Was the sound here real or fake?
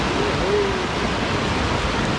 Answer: real